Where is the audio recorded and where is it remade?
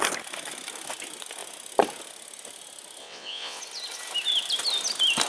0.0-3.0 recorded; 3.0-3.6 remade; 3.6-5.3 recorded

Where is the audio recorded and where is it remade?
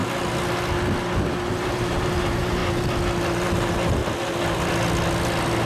0.0-1.5 recorded; 1.5-2.6 remade; 2.6-3.2 recorded; 3.2-4.0 remade; 4.0-5.7 recorded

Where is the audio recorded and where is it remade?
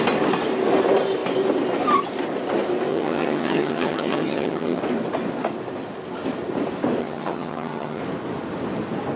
0.0-2.9 recorded; 2.9-4.8 remade; 4.8-7.0 recorded; 7.0-8.0 remade; 8.0-9.2 recorded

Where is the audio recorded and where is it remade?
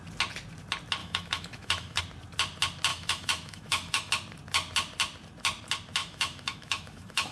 0.0-1.0 recorded; 1.0-2.0 remade; 2.0-2.9 recorded; 2.9-4.1 remade; 4.1-6.0 recorded; 6.0-7.3 remade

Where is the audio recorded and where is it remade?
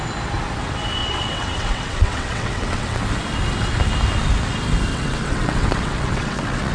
0.0-1.0 recorded; 1.0-3.0 remade; 3.0-4.9 recorded; 4.9-6.7 remade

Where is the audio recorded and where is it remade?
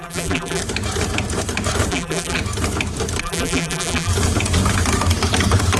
0.0-0.6 remade; 0.6-1.9 recorded; 1.9-2.4 remade; 2.4-3.2 recorded; 3.2-4.1 remade; 4.1-5.8 recorded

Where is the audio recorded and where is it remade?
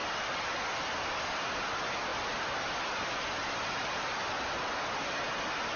0.0-5.8 recorded